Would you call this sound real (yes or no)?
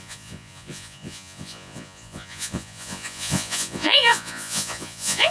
no